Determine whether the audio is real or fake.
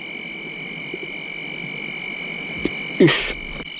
real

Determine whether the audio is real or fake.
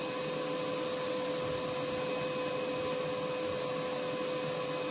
real